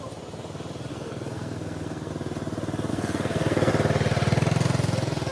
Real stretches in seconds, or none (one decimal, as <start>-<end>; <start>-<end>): 0.0-0.9; 2.1-2.9; 3.7-5.3